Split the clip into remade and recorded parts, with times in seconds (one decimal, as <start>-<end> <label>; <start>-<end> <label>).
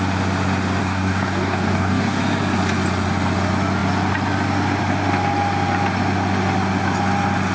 0.0-0.8 recorded; 0.8-2.2 remade; 2.2-7.5 recorded